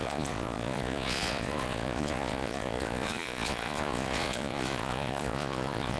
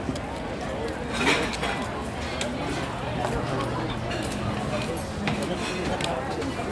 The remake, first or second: first